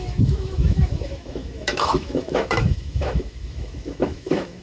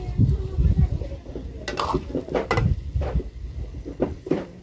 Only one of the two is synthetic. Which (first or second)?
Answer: first